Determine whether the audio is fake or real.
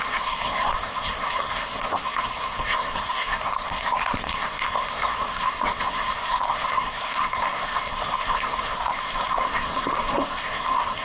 fake